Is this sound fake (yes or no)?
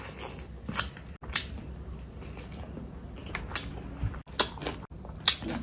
no